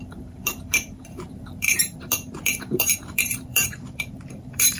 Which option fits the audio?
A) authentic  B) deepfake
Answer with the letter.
B